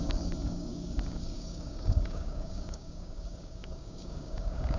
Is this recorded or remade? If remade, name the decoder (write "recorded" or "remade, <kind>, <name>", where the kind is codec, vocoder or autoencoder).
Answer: remade, codec, DAC